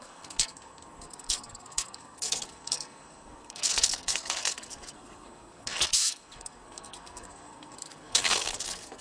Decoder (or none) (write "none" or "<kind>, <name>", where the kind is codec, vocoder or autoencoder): codec, SNAC